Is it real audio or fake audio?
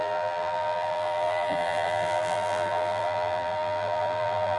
fake